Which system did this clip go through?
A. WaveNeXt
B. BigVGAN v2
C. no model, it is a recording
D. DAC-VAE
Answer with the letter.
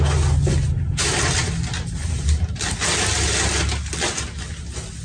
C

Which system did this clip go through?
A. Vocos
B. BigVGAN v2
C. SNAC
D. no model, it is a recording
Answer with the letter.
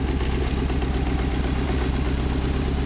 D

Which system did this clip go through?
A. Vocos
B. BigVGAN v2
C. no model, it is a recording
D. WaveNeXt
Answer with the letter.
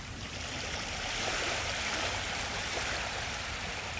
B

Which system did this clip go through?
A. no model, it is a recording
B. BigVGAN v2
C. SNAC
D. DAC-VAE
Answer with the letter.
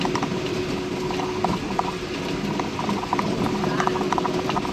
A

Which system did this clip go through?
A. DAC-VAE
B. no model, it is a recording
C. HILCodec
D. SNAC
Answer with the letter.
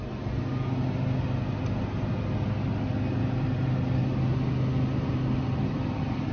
B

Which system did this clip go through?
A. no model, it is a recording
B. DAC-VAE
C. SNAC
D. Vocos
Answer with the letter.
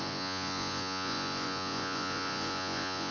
D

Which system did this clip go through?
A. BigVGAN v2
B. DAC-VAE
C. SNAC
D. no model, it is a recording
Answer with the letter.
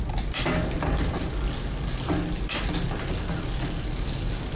D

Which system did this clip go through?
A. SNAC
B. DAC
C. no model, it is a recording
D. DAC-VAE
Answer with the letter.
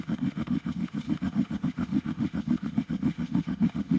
D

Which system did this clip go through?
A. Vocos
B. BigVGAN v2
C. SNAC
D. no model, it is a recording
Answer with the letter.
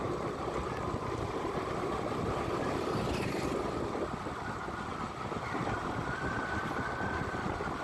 D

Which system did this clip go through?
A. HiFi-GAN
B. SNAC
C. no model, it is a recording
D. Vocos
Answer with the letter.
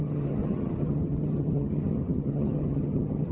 A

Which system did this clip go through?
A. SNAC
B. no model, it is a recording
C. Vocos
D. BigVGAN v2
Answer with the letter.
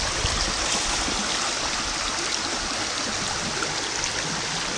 B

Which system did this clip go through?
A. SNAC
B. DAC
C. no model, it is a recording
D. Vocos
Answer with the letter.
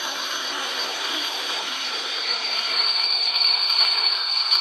A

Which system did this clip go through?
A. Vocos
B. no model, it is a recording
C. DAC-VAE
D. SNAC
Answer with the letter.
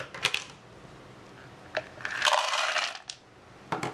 B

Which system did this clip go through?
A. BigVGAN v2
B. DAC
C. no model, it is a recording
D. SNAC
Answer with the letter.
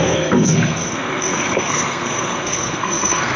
D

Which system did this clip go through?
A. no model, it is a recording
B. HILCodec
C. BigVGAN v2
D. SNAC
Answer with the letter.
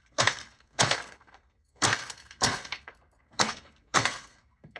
D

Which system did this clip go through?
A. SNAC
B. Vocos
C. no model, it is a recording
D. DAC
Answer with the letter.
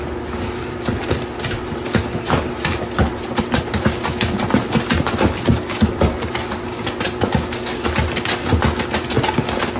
C